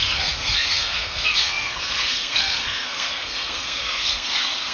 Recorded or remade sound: remade